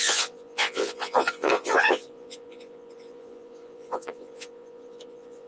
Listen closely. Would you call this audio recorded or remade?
remade